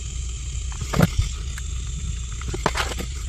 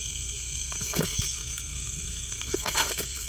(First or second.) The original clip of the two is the first